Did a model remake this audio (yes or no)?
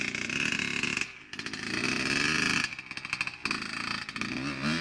no